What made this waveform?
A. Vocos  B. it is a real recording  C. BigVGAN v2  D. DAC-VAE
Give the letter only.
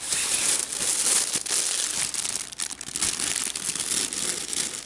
B